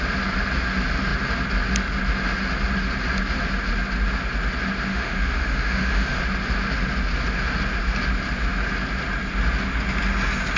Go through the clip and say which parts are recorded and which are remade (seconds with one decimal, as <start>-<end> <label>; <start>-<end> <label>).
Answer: 0.0-4.9 recorded; 4.9-6.2 remade; 6.2-10.6 recorded